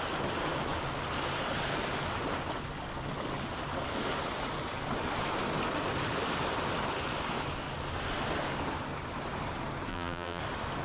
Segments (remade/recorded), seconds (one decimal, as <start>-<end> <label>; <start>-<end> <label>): 0.0-9.9 recorded; 9.9-10.4 remade; 10.4-10.8 recorded